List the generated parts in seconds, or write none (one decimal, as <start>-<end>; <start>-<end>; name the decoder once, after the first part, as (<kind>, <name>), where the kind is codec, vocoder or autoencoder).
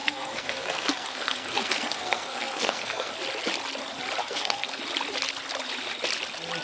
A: 0.0-3.1 (codec, SNAC); 4.2-4.8